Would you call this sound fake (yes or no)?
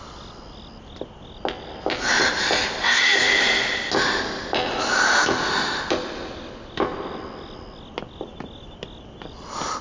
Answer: no